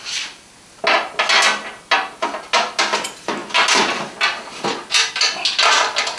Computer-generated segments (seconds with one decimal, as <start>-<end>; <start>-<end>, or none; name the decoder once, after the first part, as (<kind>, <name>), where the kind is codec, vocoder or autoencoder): none